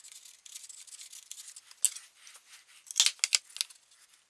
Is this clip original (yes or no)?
yes